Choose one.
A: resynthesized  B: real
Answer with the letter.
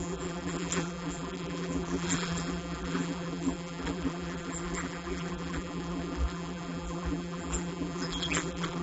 A